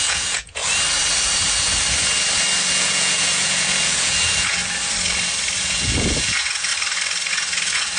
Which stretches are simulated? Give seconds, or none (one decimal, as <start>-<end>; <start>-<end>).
0.0-0.6; 2.7-4.6; 5.6-6.7; 7.3-8.0